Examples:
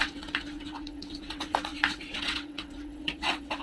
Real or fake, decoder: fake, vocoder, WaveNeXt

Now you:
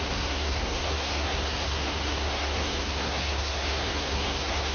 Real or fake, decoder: fake, codec, SNAC